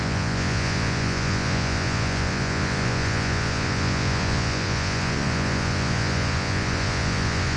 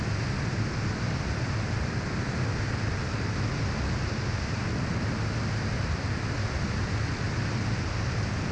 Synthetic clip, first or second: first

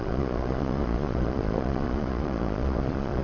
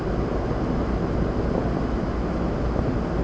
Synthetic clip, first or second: first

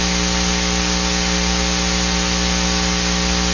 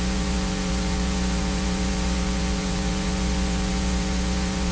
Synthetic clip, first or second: second